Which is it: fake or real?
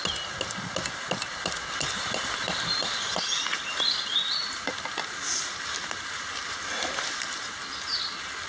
real